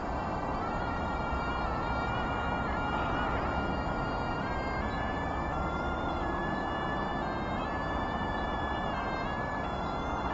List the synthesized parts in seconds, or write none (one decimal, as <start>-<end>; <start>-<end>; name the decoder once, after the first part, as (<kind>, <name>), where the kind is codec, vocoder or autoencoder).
0.0-1.5 (vocoder, BigVGAN v2)